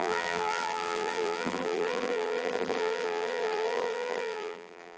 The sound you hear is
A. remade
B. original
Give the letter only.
A